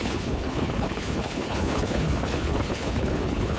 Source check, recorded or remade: remade